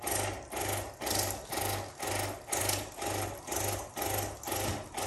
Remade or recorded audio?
recorded